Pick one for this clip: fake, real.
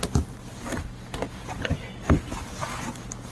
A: real